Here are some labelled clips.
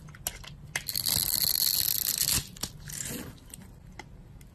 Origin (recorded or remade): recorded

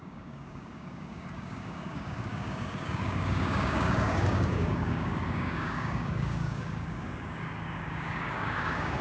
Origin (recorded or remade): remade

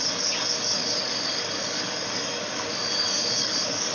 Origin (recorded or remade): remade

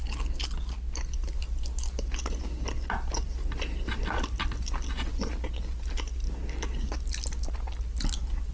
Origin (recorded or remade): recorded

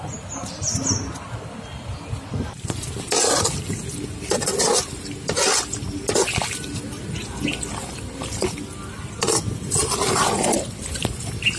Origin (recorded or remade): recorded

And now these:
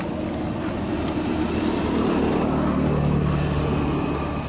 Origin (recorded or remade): recorded